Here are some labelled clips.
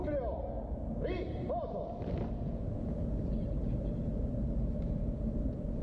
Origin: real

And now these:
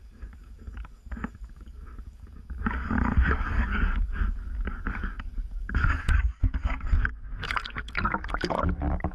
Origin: fake